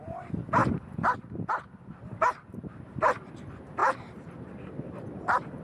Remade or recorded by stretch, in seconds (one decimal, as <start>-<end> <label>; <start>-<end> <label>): 0.0-0.6 remade; 0.6-1.5 recorded; 1.5-5.6 remade